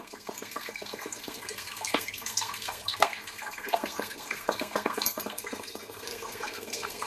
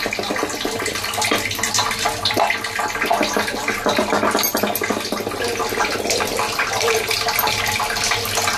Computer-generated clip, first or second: first